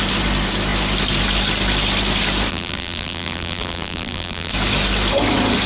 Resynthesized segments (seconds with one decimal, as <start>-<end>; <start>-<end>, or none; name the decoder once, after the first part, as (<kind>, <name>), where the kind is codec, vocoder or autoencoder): 2.5-4.5 (vocoder, BigVGAN v2)